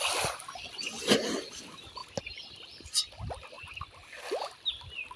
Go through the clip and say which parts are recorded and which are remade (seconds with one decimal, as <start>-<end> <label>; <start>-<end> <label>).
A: 0.0-5.2 recorded